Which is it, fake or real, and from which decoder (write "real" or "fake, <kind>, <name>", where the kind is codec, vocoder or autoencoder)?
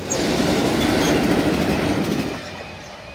real